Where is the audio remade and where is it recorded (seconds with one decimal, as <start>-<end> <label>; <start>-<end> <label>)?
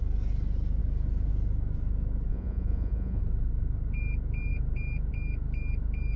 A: 0.0-2.3 recorded; 2.3-3.2 remade; 3.2-6.2 recorded